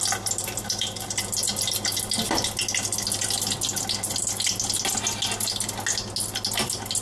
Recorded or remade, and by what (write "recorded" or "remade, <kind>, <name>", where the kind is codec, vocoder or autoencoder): recorded